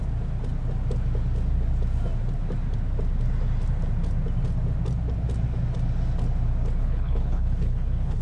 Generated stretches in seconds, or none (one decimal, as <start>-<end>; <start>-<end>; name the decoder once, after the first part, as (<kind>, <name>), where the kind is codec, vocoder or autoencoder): 6.8-8.2 (codec, HILCodec)